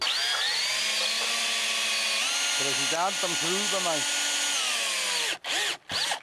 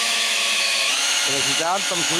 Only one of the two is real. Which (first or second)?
first